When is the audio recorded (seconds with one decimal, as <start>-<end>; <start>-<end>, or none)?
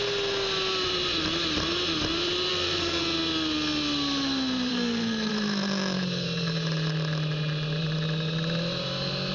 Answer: 0.0-2.5; 3.0-4.7; 5.3-9.3